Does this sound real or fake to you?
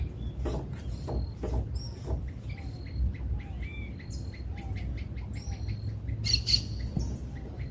real